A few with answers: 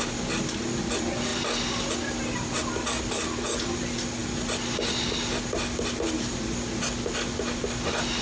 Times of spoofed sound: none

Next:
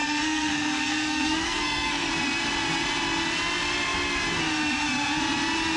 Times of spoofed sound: 0.0-2.1 (codec, SNAC)

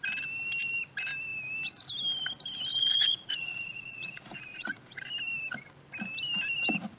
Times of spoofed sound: 2.7-5.0 (vocoder, Vocos)